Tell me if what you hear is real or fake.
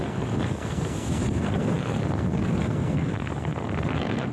fake